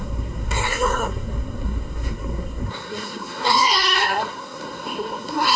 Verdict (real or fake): fake